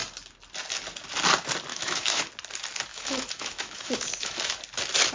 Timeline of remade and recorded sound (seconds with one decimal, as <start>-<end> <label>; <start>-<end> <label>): 0.0-1.7 recorded; 1.7-2.2 remade; 2.2-2.9 recorded; 2.9-4.6 remade; 4.6-5.1 recorded